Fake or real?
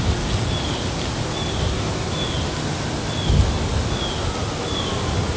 real